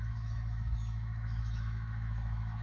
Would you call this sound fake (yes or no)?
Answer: yes